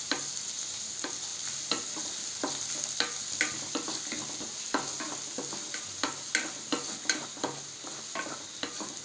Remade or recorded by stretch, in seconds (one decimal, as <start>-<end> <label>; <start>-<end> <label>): 0.0-9.0 recorded